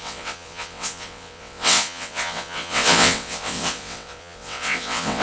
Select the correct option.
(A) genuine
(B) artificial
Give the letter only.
B